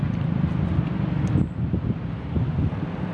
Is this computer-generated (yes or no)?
no